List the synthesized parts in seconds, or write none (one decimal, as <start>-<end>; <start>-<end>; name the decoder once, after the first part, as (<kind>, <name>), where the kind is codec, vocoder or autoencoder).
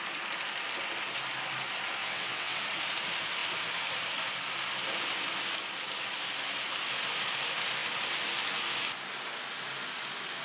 2.0-2.6 (vocoder, WaveNeXt)